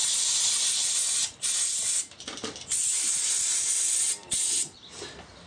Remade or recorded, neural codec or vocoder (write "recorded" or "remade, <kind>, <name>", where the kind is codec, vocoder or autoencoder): recorded